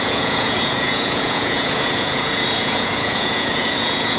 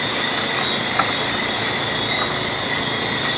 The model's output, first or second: first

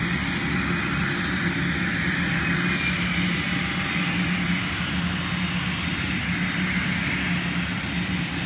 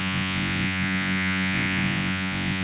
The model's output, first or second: second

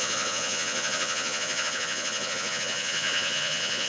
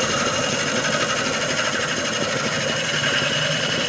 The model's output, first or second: first